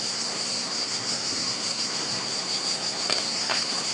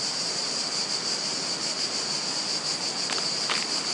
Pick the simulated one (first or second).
first